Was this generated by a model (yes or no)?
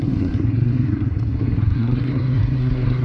yes